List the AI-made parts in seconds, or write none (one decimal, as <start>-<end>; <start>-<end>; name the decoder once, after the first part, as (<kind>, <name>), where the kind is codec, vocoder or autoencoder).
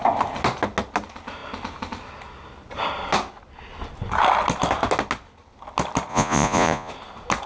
6.1-6.9 (vocoder, Vocos)